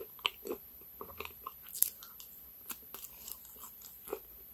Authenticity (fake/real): real